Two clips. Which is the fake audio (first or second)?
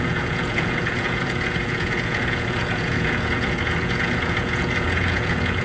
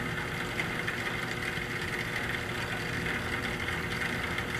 first